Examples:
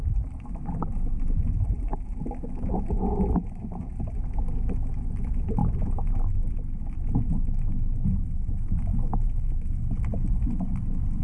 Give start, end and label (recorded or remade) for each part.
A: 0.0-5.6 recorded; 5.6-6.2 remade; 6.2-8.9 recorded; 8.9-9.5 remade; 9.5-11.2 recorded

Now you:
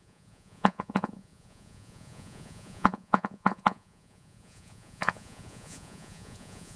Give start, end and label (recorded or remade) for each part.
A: 0.0-6.8 remade